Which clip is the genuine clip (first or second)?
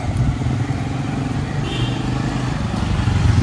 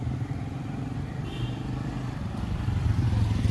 first